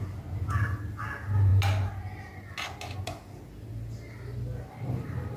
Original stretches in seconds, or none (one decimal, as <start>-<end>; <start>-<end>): 0.0-5.4